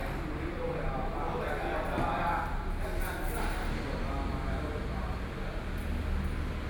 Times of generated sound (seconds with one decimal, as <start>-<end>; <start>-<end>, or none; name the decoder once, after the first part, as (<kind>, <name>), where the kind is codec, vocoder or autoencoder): none